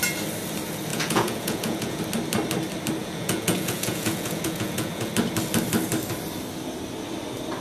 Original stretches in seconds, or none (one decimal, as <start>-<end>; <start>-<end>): 0.0-0.9; 2.0-3.0; 5.1-7.6